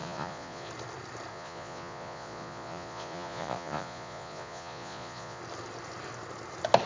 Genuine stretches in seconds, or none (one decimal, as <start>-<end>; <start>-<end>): 0.7-1.3; 5.4-6.9